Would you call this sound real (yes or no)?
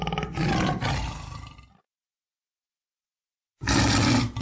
yes